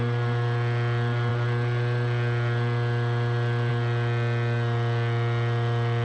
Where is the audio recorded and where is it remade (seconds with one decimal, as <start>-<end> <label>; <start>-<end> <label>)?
0.0-6.0 recorded